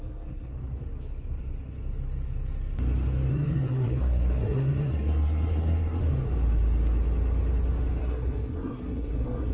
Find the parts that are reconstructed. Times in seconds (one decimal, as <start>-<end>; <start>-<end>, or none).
0.0-0.5; 3.3-6.0; 8.0-9.5